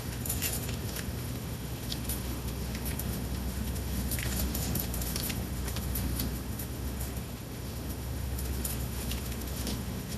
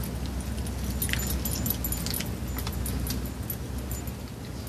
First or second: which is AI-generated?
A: first